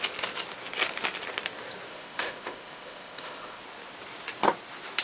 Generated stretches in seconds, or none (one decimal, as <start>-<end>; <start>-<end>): 1.9-3.6